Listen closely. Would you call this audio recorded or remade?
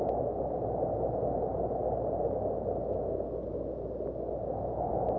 recorded